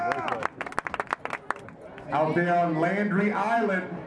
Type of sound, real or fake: real